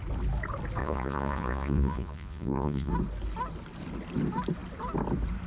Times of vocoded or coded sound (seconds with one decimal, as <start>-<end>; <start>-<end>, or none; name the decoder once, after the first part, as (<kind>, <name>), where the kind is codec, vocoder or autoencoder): 0.8-2.9 (vocoder, Vocos)